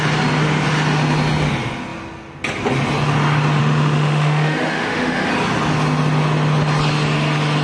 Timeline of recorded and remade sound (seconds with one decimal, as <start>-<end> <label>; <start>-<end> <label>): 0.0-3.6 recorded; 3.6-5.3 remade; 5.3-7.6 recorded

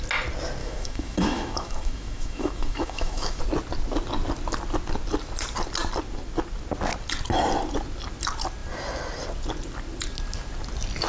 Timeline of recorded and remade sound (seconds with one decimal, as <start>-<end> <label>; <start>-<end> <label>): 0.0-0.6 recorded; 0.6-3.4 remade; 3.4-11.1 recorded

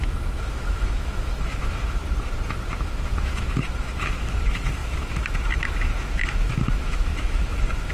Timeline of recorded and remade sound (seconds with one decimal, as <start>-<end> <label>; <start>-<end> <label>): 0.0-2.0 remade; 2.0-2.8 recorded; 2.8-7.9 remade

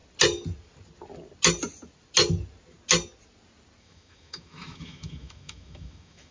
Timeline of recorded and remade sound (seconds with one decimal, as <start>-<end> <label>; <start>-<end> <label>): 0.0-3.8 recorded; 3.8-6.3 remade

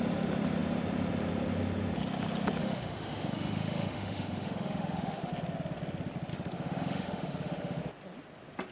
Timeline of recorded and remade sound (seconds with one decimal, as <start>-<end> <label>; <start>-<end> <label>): 0.0-2.6 recorded; 2.6-5.3 remade; 5.3-6.3 recorded; 6.3-7.8 remade; 7.8-8.7 recorded

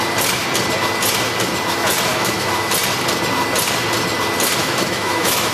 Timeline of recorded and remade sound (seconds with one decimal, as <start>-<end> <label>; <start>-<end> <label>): 0.0-2.1 recorded; 2.1-2.7 remade; 2.7-4.6 recorded; 4.6-5.5 remade